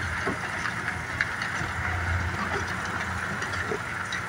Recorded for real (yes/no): yes